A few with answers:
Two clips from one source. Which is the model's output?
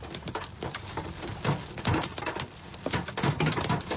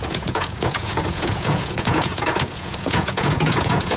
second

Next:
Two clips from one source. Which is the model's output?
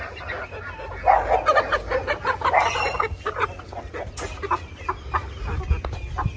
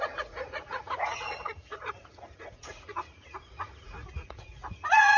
second